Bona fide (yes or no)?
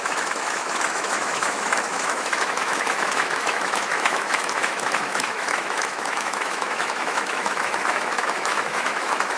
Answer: no